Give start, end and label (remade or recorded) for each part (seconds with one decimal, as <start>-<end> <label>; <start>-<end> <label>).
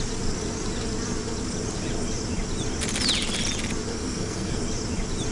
0.0-3.9 recorded; 3.9-4.6 remade; 4.6-5.3 recorded